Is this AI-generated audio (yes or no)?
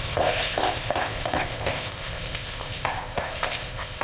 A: yes